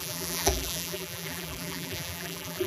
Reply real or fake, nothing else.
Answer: fake